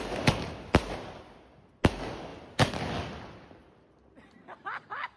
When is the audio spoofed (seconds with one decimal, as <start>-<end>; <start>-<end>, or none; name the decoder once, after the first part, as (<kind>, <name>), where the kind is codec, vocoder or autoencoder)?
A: none